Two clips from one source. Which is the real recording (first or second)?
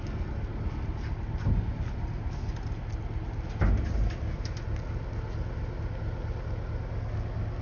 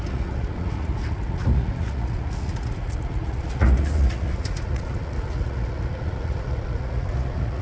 first